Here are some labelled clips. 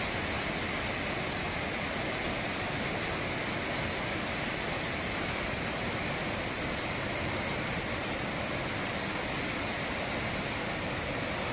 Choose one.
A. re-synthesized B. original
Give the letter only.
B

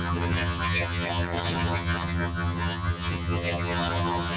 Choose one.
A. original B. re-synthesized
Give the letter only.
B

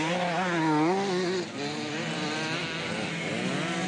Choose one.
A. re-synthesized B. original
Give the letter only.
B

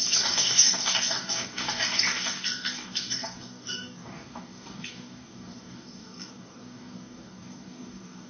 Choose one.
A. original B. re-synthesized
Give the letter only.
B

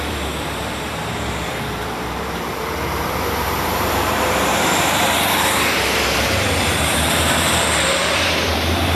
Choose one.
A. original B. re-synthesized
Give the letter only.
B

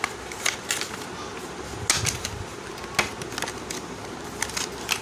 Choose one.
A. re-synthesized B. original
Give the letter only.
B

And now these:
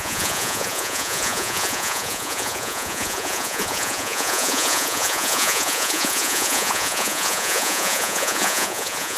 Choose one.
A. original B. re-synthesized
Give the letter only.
B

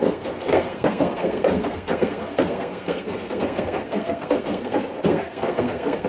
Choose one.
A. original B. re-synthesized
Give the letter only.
B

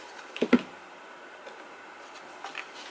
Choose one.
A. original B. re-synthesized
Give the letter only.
A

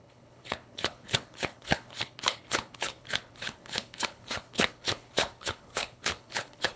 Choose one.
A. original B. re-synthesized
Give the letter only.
B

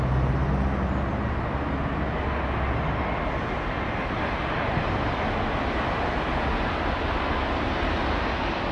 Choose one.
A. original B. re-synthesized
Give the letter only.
A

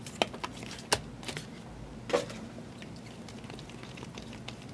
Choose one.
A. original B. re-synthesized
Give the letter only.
A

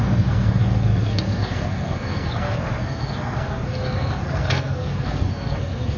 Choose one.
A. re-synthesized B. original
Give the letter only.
A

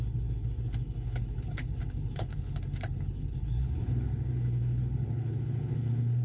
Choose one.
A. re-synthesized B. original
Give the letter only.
A